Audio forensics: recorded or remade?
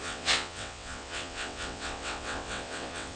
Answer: remade